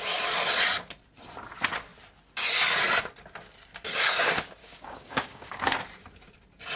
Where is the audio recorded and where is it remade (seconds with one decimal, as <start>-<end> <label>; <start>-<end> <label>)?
0.0-4.6 recorded; 4.6-5.7 remade; 5.7-6.8 recorded